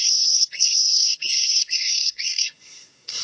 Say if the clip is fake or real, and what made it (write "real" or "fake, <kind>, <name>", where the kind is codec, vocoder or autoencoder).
fake, codec, SNAC